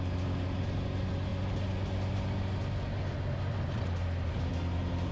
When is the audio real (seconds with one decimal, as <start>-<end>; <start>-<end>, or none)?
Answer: 0.0-5.1